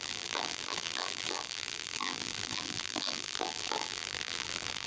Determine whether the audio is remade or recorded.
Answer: remade